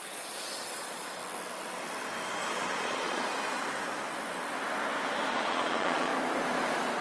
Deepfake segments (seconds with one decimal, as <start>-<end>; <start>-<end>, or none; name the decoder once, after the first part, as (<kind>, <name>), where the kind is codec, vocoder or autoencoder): 0.0-1.2 (vocoder, Vocos); 2.5-3.2; 5.3-6.1